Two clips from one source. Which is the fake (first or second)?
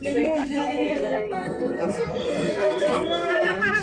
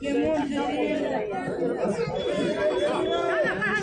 first